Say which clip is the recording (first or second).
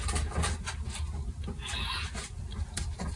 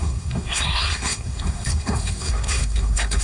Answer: first